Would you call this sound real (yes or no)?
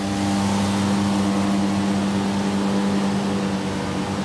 yes